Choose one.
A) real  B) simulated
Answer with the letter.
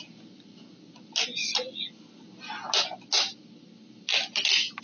A